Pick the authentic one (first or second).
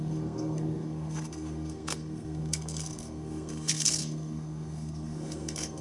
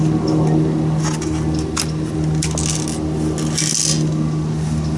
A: second